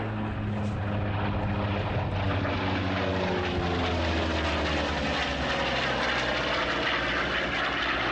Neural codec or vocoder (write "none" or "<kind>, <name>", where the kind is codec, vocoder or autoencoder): none